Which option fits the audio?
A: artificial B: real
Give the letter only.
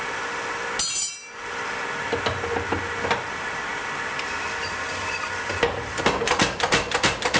B